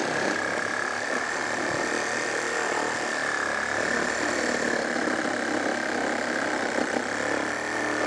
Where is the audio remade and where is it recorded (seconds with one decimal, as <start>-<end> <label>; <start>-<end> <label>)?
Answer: 0.0-1.4 remade; 1.4-8.1 recorded